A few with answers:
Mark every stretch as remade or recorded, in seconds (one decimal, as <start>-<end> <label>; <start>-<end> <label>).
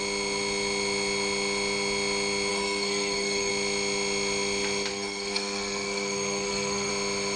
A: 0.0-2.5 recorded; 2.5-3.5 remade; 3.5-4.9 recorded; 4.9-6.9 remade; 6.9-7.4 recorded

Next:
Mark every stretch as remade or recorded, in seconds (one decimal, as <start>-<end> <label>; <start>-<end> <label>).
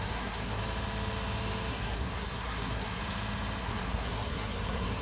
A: 0.0-0.6 remade; 0.6-1.7 recorded; 1.7-3.0 remade; 3.0-3.6 recorded; 3.6-5.0 remade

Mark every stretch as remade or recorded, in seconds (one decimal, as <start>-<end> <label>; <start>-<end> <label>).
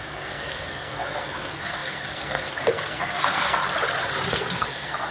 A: 0.0-3.6 remade; 3.6-4.3 recorded; 4.3-5.1 remade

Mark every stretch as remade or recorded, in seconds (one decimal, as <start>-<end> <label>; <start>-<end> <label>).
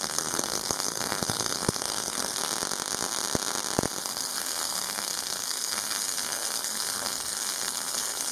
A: 0.0-2.4 remade; 2.4-4.0 recorded; 4.0-8.3 remade